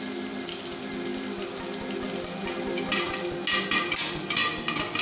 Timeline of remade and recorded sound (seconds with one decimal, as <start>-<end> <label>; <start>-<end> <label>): 0.0-5.0 recorded